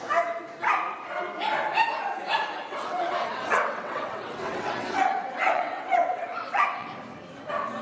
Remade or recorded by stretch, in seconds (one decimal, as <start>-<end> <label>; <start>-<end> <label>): 0.0-2.6 recorded; 2.6-6.9 remade; 6.9-7.8 recorded